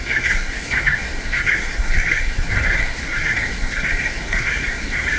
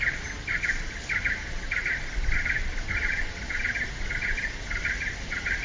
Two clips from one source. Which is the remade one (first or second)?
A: first